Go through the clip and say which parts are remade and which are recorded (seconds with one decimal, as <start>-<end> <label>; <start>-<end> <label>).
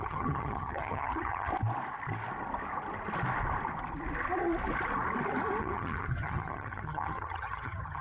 0.0-1.5 remade; 1.5-5.6 recorded; 5.6-8.0 remade